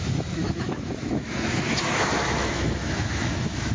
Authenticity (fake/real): fake